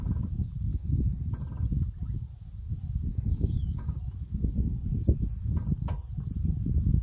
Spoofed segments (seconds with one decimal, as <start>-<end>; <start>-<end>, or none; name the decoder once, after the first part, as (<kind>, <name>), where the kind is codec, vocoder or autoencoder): 0.7-1.3 (codec, DAC); 3.1-4.0